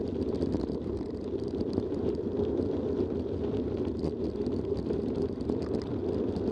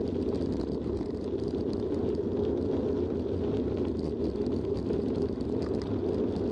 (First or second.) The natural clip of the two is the second